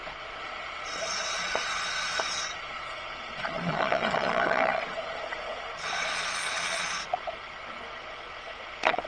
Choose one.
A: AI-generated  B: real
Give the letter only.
A